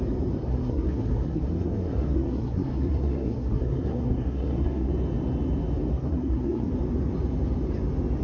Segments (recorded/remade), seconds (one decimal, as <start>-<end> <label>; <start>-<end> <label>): 0.0-0.4 recorded; 0.4-4.9 remade; 4.9-5.9 recorded; 5.9-6.7 remade; 6.7-8.2 recorded

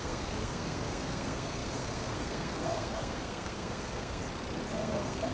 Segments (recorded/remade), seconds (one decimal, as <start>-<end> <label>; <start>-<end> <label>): 0.0-4.2 remade; 4.2-4.7 recorded; 4.7-5.3 remade

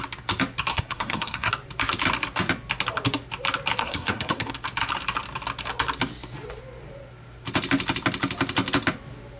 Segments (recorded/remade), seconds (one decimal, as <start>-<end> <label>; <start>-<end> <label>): 0.0-0.7 recorded; 0.7-1.5 remade; 1.5-3.8 recorded; 3.8-4.5 remade; 4.5-9.4 recorded

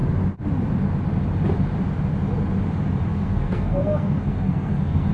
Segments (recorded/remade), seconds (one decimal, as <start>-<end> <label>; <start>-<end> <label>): 0.0-3.1 recorded; 3.1-5.1 remade

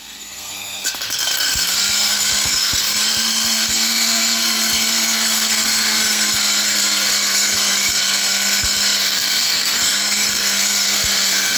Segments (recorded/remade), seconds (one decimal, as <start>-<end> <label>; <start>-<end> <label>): 0.0-11.6 remade

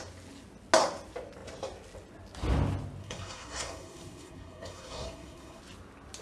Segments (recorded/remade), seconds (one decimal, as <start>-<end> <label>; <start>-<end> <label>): 0.0-3.0 recorded; 3.0-5.6 remade; 5.6-6.2 recorded